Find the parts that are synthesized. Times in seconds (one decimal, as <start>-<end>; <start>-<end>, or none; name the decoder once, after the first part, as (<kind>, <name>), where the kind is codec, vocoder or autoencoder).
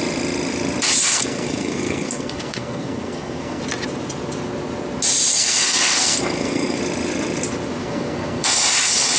1.0-3.6 (codec, SNAC); 5.3-6.8; 7.8-8.5